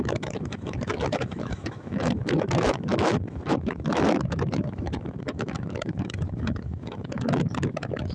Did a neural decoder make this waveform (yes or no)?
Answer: yes